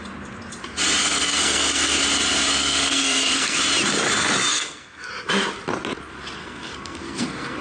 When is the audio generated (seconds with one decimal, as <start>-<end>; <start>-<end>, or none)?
1.0-2.0; 2.5-3.6; 4.5-5.1; 6.4-7.6